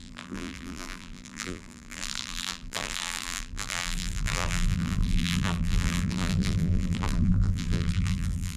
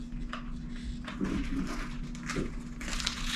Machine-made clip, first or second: first